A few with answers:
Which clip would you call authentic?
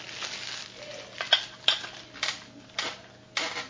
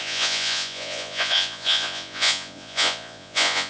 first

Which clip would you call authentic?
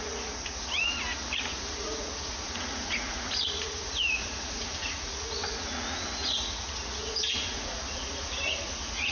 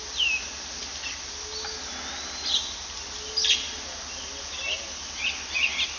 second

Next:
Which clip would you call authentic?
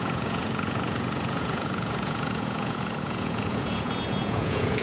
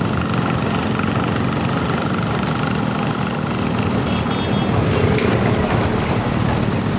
second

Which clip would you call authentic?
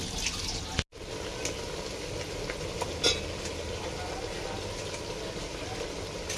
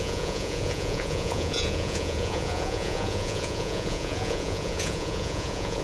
first